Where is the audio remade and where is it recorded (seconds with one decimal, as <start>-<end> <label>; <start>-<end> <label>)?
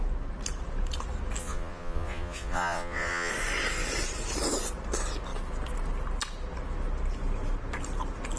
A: 0.0-1.4 recorded; 1.4-3.3 remade; 3.3-8.4 recorded